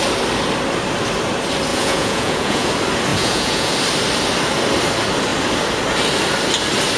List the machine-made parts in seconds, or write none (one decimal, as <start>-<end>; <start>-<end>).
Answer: 1.7-2.7; 3.1-3.7